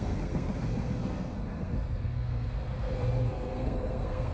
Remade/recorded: remade